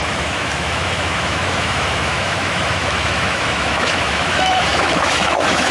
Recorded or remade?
remade